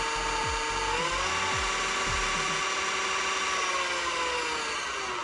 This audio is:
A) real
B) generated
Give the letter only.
A